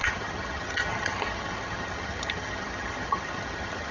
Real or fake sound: fake